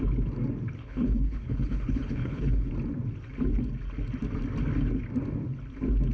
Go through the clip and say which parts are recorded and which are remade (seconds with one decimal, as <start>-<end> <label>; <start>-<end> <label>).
0.0-0.8 recorded; 0.8-2.7 remade; 2.7-6.1 recorded